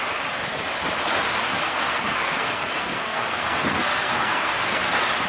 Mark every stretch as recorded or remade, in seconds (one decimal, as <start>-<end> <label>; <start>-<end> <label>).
0.0-1.6 recorded; 1.6-4.8 remade; 4.8-5.3 recorded